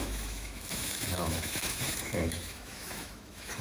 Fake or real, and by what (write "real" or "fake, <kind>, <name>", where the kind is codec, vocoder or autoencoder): fake, autoencoder, DAC-VAE